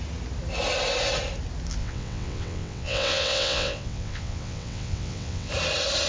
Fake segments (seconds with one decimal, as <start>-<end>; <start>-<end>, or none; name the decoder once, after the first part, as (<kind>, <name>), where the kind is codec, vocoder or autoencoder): 1.8-5.5 (vocoder, WaveNeXt)